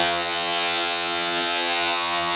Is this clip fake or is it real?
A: fake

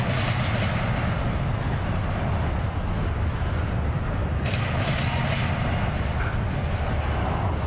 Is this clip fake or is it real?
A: real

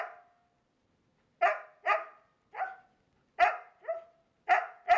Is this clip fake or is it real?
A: real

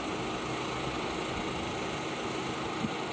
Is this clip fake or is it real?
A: real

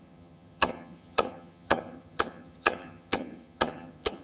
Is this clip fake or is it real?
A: fake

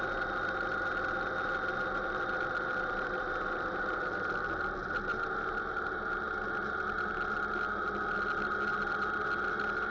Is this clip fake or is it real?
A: real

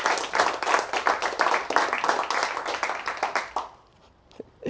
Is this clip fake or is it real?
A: real